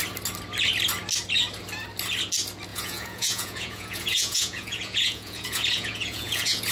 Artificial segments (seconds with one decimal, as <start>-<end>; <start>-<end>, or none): 2.7-6.7